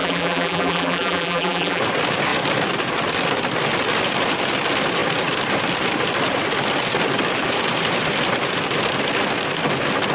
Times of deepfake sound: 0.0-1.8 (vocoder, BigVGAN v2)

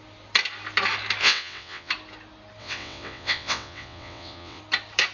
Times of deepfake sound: 1.2-1.9 (vocoder, WaveNeXt); 2.6-4.6

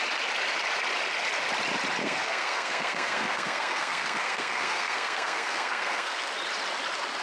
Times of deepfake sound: 2.0-6.3 (codec, SNAC)

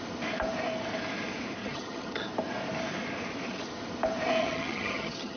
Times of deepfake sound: 1.6-2.3 (vocoder, HiFi-GAN); 4.4-5.4

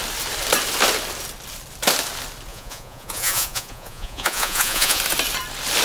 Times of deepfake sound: 2.5-5.0 (vocoder, Vocos)

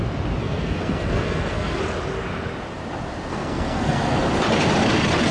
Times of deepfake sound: 0.4-1.8 (codec, SNAC); 3.3-4.2

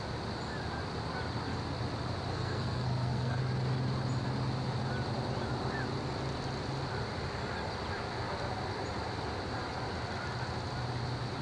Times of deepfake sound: 2.3-3.4 (codec, SNAC)